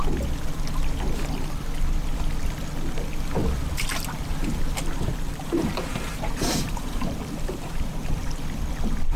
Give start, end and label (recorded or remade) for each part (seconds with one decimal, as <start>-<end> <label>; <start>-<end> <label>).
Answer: 0.0-5.3 recorded; 5.3-8.2 remade; 8.2-9.2 recorded